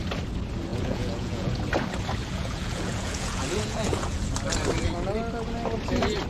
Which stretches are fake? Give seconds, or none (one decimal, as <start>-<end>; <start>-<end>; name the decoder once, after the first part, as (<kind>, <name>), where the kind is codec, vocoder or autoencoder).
0.7-1.6 (vocoder, Vocos); 2.2-4.3